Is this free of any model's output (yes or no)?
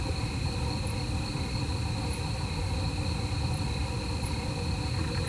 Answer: yes